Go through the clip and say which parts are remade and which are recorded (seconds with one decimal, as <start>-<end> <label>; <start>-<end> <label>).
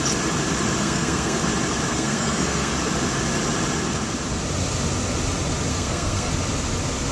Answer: 0.0-0.8 recorded; 0.8-1.4 remade; 1.4-1.9 recorded; 1.9-2.7 remade; 2.7-5.7 recorded; 5.7-6.3 remade; 6.3-7.1 recorded